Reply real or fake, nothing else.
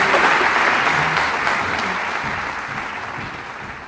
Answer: real